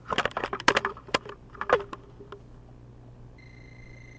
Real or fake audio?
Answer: real